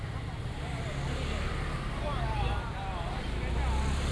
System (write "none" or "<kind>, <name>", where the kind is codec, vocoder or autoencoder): none